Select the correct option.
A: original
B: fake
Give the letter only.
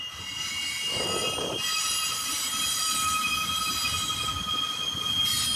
A